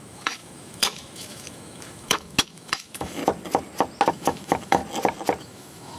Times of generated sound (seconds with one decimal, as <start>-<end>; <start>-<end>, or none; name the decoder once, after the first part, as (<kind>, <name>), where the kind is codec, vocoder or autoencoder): 0.0-3.2 (autoencoder, DAC-VAE); 4.1-4.8; 5.4-6.0